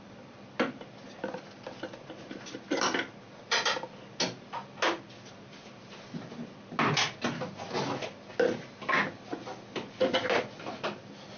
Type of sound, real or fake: real